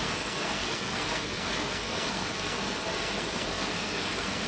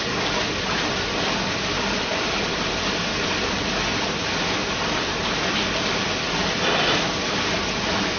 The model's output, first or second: first